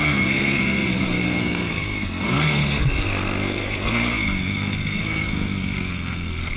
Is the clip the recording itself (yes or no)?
no